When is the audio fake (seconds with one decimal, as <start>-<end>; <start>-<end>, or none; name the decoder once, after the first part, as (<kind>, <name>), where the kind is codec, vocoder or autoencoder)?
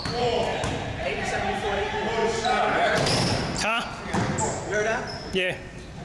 none